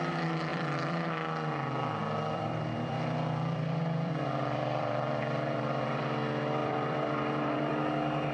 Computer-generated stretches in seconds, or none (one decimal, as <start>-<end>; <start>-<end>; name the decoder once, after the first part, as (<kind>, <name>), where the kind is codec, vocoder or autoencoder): 0.5-1.1 (vocoder, BigVGAN v2); 2.0-6.0; 6.6-7.9